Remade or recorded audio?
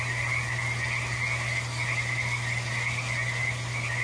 recorded